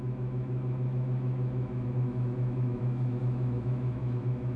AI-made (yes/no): yes